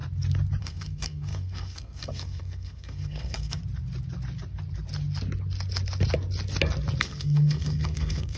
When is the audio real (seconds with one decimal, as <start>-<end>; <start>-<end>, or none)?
0.0-0.6; 3.6-7.0